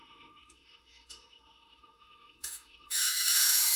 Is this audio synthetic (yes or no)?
yes